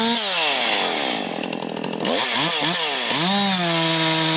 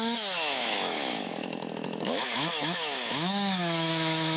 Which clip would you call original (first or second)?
first